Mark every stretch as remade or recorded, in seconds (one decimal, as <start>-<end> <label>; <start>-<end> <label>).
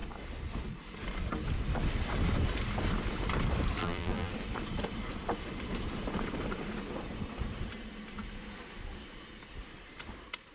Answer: 0.0-3.8 recorded; 3.8-4.3 remade; 4.3-10.5 recorded